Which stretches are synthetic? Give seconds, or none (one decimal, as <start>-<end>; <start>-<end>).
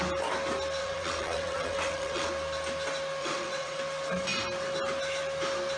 0.8-2.3; 3.2-3.8